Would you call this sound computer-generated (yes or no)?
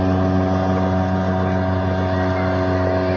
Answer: no